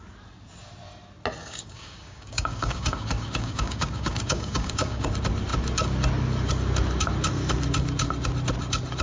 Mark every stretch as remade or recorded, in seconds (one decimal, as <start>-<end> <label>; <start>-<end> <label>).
0.0-1.4 recorded; 1.4-5.1 remade; 5.1-9.0 recorded